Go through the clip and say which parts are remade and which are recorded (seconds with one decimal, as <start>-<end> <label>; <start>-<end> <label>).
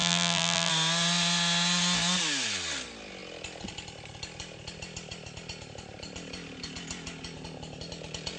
0.0-0.7 remade; 0.7-8.4 recorded